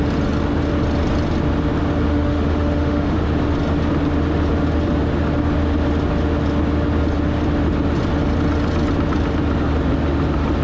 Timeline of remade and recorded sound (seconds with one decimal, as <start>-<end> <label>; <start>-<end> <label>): 0.0-2.1 recorded; 2.1-3.2 remade; 3.2-10.6 recorded